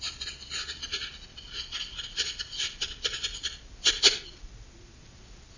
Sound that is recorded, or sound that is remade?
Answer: remade